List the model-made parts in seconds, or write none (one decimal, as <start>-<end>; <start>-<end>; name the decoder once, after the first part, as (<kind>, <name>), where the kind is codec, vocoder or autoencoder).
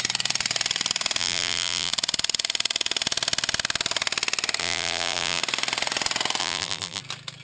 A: 1.2-1.9 (vocoder, BigVGAN v2); 4.6-5.4; 6.4-7.0